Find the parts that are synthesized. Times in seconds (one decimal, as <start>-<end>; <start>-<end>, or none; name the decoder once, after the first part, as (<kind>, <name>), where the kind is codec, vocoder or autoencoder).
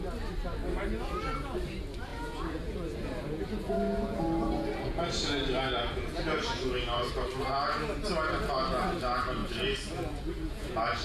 2.1-7.1 (vocoder, Vocos); 9.4-11.0